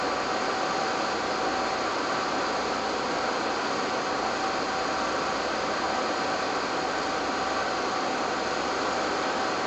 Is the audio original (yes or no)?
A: yes